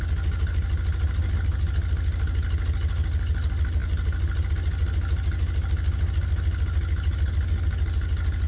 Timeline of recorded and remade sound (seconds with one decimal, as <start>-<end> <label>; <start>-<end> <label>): 0.0-8.5 recorded

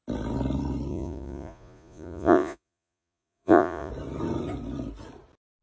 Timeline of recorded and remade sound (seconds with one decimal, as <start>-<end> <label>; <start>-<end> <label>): 0.0-0.9 recorded; 0.9-3.9 remade; 3.9-5.6 recorded

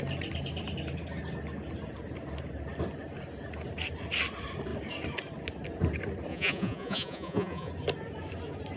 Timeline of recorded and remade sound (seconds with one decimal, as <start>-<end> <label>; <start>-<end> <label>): 0.0-6.3 recorded; 6.3-7.7 remade; 7.7-8.8 recorded

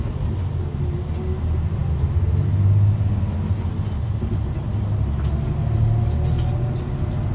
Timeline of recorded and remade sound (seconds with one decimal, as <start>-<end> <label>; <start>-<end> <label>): 0.0-7.3 recorded

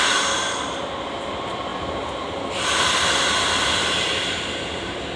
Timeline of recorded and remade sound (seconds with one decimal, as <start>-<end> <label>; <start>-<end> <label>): 0.0-5.2 recorded